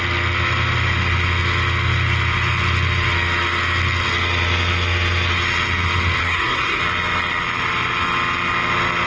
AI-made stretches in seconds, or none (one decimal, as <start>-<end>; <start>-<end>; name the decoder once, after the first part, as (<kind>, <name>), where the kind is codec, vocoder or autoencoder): 6.2-6.8 (codec, SNAC)